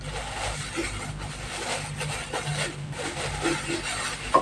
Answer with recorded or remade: recorded